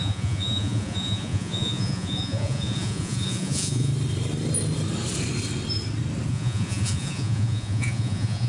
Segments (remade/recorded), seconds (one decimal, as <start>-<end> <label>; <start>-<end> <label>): 0.0-3.9 remade; 3.9-6.3 recorded; 6.3-8.5 remade